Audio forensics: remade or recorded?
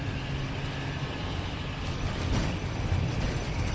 recorded